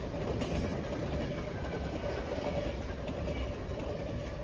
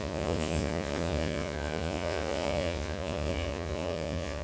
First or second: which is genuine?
first